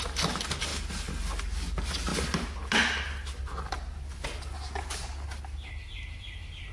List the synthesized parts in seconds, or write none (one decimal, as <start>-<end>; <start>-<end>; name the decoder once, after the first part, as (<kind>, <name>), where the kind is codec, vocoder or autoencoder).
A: none